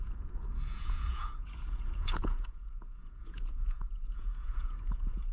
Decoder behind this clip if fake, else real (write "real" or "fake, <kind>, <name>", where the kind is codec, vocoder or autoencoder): fake, vocoder, Vocos